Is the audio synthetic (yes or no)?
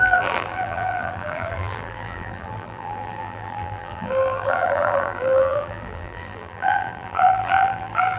yes